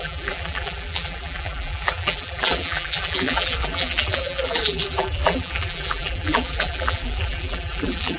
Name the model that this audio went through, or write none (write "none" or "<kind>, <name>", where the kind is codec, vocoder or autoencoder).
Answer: vocoder, BigVGAN v2